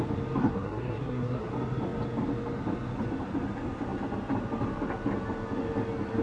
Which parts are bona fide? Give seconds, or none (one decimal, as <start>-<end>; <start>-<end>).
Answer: 0.0-0.4; 1.5-6.2